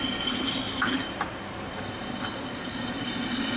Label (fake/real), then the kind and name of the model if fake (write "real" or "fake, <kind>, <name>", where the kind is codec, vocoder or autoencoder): real